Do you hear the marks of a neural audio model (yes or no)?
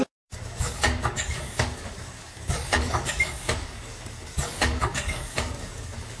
yes